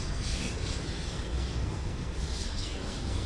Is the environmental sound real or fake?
fake